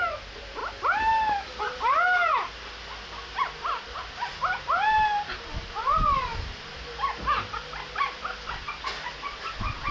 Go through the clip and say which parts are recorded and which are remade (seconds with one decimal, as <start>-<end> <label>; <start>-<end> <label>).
0.0-0.6 remade; 0.6-1.6 recorded; 1.6-2.8 remade; 2.8-3.4 recorded; 3.4-6.3 remade; 6.3-8.8 recorded; 8.8-9.9 remade

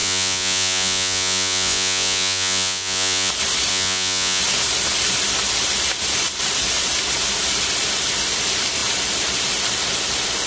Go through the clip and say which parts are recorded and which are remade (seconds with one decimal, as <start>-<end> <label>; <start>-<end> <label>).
0.0-3.3 remade; 3.3-3.7 recorded; 3.7-4.4 remade; 4.4-10.5 recorded

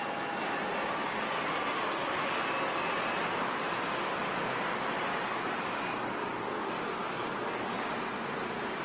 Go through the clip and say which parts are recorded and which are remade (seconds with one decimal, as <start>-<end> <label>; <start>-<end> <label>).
0.0-5.1 recorded; 5.1-7.9 remade; 7.9-8.8 recorded

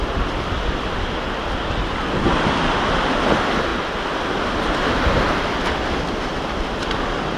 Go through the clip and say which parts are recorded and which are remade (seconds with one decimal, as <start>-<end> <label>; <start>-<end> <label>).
0.0-7.4 recorded

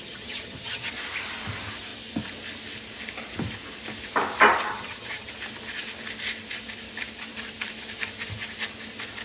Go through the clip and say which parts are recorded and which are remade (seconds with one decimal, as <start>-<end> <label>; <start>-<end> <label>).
0.0-0.9 remade; 0.9-4.7 recorded; 4.7-5.3 remade; 5.3-9.2 recorded

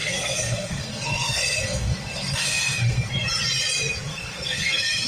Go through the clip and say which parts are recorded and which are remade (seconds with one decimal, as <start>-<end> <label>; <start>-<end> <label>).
0.0-3.1 remade; 3.1-4.1 recorded; 4.1-5.1 remade